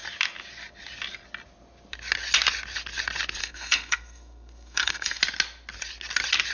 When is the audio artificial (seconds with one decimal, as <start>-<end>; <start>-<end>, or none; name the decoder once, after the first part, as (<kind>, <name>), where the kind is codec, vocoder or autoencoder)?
3.4-5.2 (codec, SNAC)